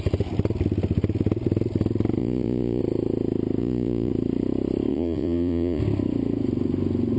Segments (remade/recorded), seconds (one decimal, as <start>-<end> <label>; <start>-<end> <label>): 0.0-2.2 recorded; 2.2-2.8 remade; 2.8-3.6 recorded; 3.6-4.1 remade; 4.1-4.9 recorded; 4.9-5.8 remade; 5.8-7.2 recorded